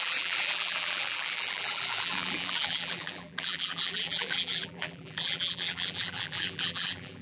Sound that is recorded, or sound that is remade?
remade